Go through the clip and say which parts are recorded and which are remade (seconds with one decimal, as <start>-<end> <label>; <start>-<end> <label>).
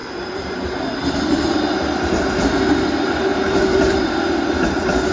0.0-2.0 remade; 2.0-3.3 recorded; 3.3-4.1 remade; 4.1-5.1 recorded